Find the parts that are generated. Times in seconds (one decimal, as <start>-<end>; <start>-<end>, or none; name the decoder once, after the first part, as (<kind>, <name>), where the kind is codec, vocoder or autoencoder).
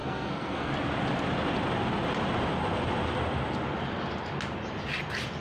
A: 0.0-0.7 (codec, SNAC)